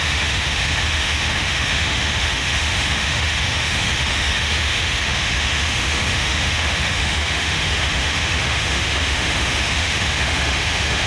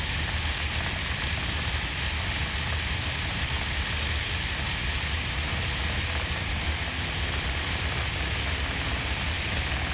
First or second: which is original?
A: second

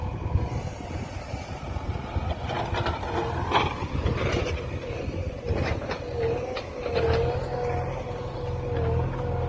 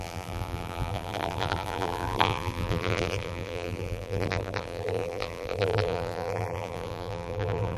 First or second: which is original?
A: first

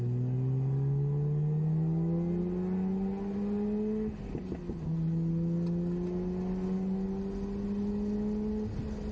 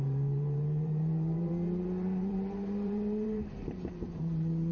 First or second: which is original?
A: first